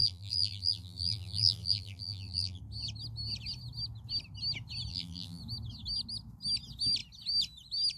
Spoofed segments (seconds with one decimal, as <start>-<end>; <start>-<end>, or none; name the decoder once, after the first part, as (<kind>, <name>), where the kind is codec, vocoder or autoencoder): 0.0-2.6 (vocoder, BigVGAN v2); 4.9-5.4